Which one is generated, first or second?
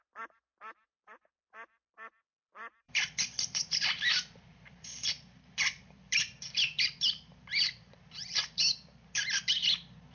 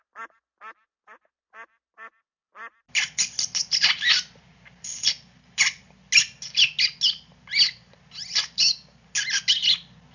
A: first